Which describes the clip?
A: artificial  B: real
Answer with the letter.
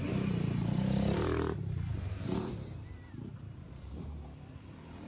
A